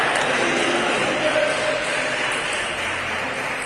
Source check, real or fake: real